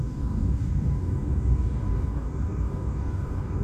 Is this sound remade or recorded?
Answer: remade